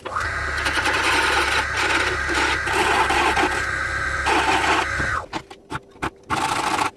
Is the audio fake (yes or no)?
no